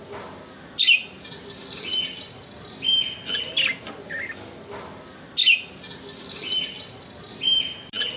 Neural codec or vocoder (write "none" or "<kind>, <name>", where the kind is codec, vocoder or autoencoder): none